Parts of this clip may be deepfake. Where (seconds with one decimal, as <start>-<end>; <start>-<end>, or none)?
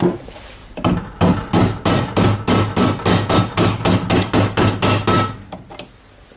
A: none